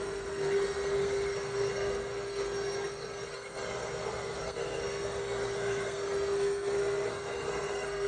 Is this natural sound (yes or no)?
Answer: no